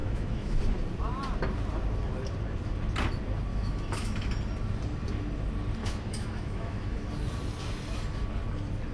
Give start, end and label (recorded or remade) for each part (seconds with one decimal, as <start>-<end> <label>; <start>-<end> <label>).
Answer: 0.0-0.6 remade; 0.6-3.5 recorded; 3.5-4.3 remade; 4.3-5.8 recorded; 5.8-7.1 remade; 7.1-8.9 recorded